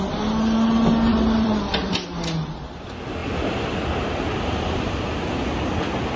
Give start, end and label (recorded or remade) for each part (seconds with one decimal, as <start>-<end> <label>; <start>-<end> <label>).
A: 0.0-1.1 recorded; 1.1-1.9 remade; 1.9-6.2 recorded